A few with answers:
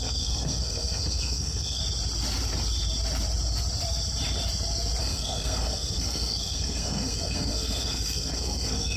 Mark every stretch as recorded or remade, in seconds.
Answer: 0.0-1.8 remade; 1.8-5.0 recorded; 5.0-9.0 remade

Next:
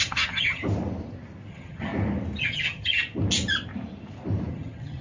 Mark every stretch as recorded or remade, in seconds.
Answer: 0.0-0.6 remade; 0.6-1.5 recorded; 1.5-1.9 remade; 1.9-2.4 recorded; 2.4-3.0 remade; 3.0-4.5 recorded; 4.5-5.0 remade

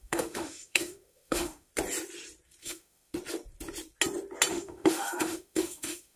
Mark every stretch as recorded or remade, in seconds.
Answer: 0.0-1.7 remade; 1.7-2.6 recorded; 2.6-3.1 remade; 3.1-4.5 recorded; 4.5-6.2 remade

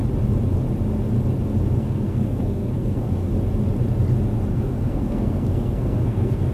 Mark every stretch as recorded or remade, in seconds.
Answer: 0.0-1.8 recorded; 1.8-3.2 remade; 3.2-4.5 recorded; 4.5-6.5 remade

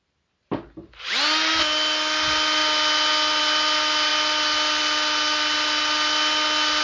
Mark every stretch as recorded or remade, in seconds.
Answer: 0.0-6.8 recorded

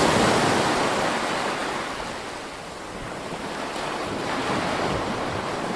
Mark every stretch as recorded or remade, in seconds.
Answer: 0.0-5.8 recorded